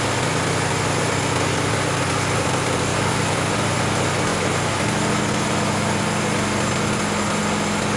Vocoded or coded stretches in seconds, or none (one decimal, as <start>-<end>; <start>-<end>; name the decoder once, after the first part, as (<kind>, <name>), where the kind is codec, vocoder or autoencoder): 2.9-3.5 (codec, DAC)